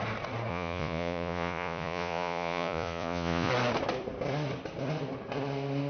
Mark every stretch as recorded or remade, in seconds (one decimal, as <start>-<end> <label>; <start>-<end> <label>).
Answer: 0.0-0.5 recorded; 0.5-3.5 remade; 3.5-5.9 recorded